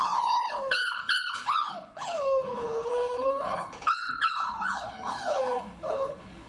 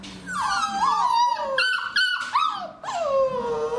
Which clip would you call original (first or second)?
second